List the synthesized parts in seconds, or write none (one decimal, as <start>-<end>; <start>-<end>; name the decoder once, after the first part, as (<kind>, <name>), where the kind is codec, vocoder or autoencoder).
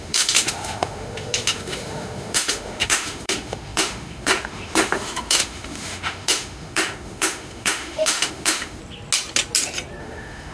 0.0-8.8 (autoencoder, DAC-VAE); 10.0-10.5